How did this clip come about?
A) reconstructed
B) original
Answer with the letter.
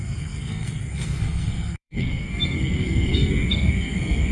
A